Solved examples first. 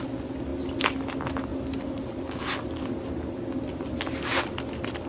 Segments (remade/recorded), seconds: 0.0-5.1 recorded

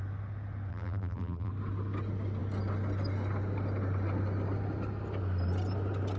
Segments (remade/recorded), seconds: 0.0-0.7 recorded; 0.7-1.5 remade; 1.5-6.2 recorded

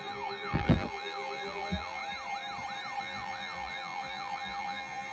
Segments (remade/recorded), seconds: 0.0-2.0 remade; 2.0-3.0 recorded; 3.0-5.1 remade

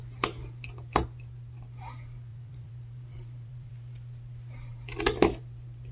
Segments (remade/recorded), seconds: 0.0-2.3 recorded; 2.3-3.7 remade; 3.7-5.9 recorded

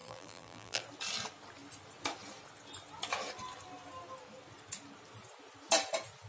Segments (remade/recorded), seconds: 0.0-0.8 remade; 0.8-6.3 recorded

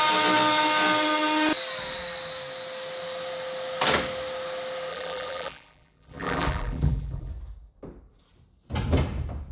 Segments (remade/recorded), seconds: 0.0-4.9 recorded; 4.9-7.3 remade; 7.3-9.5 recorded

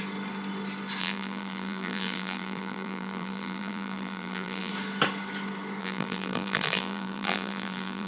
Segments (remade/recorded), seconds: 0.0-1.0 recorded; 1.0-4.7 remade; 4.7-5.8 recorded; 5.8-8.1 remade

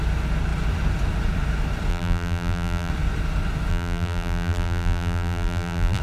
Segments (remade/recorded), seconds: 0.0-1.9 recorded; 1.9-2.9 remade; 2.9-3.7 recorded; 3.7-6.0 remade